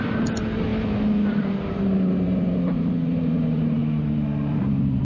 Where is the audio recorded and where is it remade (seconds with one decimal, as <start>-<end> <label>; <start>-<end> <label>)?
0.0-0.7 remade; 0.7-1.3 recorded; 1.3-3.8 remade; 3.8-4.5 recorded; 4.5-5.0 remade